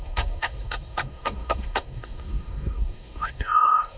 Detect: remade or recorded remade